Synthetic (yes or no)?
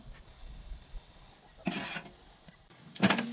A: no